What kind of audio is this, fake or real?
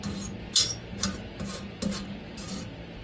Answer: real